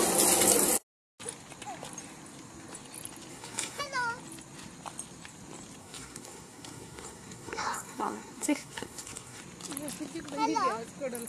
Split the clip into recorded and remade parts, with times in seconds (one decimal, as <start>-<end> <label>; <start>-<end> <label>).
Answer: 0.0-3.3 recorded; 3.3-3.8 remade; 3.8-5.8 recorded; 5.8-9.4 remade; 9.4-11.3 recorded